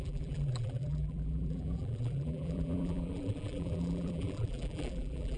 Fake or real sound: fake